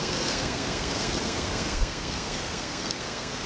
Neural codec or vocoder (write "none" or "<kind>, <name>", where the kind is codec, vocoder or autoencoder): codec, SNAC